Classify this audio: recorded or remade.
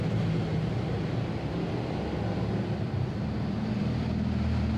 recorded